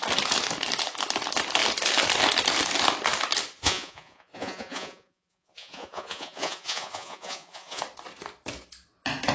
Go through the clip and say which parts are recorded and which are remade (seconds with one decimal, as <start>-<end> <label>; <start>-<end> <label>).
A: 0.0-3.6 recorded; 3.6-7.8 remade; 7.8-9.3 recorded